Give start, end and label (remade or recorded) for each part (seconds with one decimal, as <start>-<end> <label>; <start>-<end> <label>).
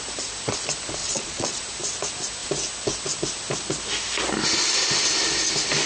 0.0-1.0 recorded; 1.0-1.6 remade; 1.6-5.9 recorded